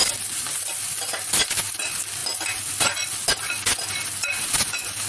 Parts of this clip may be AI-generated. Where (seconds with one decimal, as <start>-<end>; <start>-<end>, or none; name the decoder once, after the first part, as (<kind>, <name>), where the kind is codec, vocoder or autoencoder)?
none